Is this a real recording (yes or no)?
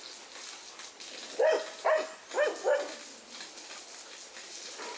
yes